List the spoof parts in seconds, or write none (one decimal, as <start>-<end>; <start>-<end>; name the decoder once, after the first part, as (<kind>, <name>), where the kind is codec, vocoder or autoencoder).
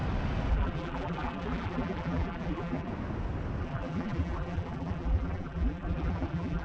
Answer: 0.5-2.9 (vocoder, BigVGAN v2); 3.6-6.6